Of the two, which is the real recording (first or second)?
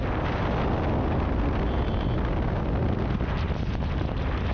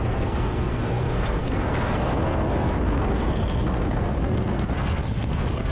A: first